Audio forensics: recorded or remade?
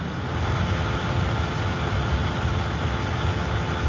remade